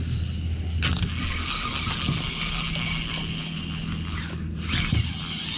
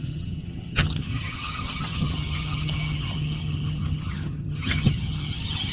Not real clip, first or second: second